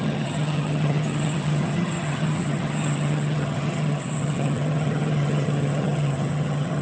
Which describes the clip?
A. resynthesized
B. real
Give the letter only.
A